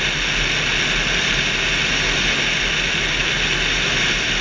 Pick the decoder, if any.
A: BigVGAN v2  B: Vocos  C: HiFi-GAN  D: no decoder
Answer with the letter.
D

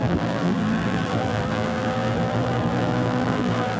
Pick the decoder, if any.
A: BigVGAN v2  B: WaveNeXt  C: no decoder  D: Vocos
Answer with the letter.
A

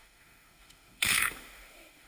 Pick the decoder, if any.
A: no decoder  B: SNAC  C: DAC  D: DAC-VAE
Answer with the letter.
D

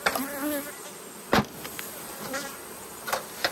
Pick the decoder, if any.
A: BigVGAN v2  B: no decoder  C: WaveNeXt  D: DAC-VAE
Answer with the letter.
B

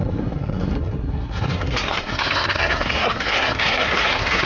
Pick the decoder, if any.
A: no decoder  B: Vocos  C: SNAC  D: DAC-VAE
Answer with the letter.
C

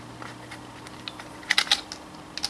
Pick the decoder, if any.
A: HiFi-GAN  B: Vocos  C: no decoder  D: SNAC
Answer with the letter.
C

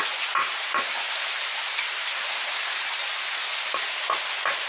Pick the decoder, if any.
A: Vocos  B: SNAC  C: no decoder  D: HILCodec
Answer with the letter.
C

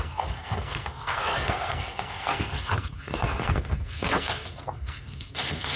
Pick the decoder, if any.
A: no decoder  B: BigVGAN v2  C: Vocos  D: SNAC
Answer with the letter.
D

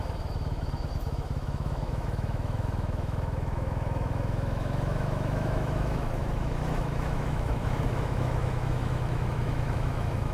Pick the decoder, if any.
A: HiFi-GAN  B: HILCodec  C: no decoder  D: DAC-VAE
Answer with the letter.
D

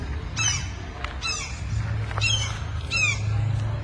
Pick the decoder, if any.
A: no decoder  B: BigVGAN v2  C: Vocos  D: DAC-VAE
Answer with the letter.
A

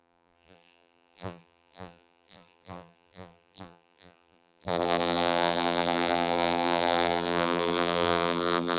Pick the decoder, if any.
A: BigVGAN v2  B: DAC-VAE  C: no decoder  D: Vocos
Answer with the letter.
A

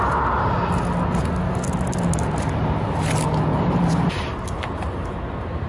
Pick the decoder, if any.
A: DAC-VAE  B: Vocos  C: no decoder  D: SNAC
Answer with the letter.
C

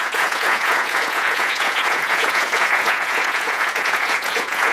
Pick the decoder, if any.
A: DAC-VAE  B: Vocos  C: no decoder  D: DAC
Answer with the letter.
B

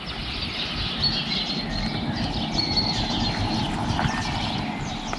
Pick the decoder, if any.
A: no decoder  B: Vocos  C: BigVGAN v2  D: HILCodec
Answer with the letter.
A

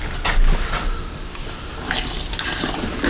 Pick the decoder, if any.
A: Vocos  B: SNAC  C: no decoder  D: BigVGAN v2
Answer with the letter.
C